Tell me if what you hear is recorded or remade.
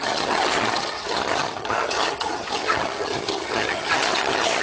remade